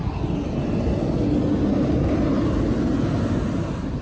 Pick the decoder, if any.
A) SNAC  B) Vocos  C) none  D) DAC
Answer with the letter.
C